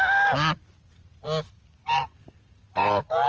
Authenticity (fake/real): real